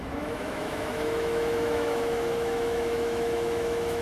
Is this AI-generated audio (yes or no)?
yes